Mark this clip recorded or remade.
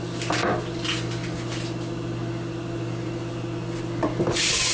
recorded